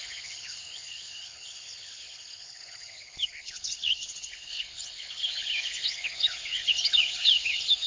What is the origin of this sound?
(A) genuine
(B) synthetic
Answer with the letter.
B